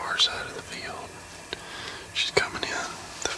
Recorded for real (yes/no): yes